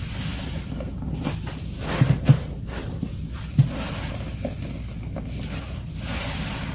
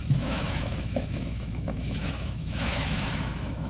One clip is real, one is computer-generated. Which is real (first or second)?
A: first